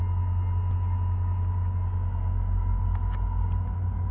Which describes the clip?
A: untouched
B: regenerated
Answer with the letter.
A